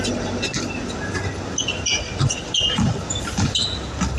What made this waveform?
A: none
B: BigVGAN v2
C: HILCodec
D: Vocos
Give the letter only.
A